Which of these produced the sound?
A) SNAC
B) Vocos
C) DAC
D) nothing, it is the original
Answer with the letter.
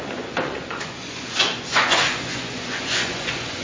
B